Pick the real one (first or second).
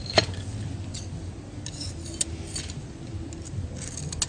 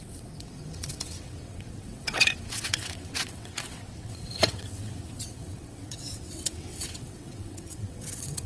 first